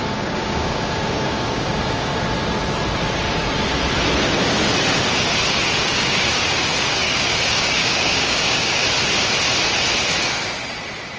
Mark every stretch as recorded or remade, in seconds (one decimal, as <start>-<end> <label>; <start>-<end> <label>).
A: 0.0-2.1 remade; 2.1-5.8 recorded; 5.8-8.8 remade; 8.8-11.2 recorded